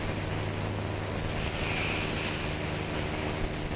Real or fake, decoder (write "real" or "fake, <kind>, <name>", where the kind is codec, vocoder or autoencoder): real